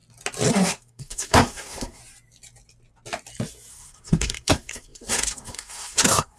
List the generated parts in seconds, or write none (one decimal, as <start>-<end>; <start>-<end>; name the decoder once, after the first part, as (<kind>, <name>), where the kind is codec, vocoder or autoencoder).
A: 0.5-2.0 (codec, SNAC); 3.7-6.4